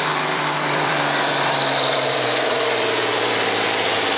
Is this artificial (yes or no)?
yes